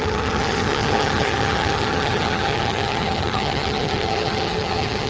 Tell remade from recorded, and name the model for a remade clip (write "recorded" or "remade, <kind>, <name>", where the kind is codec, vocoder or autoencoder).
remade, vocoder, HiFi-GAN